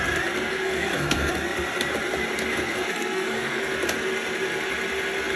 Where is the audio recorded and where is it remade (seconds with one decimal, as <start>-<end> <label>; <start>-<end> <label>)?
0.0-0.5 recorded; 0.5-1.3 remade; 1.3-2.5 recorded; 2.5-3.6 remade; 3.6-5.4 recorded